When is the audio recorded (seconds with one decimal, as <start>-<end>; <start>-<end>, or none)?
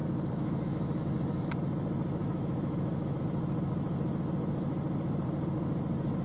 1.0-2.2; 3.2-6.2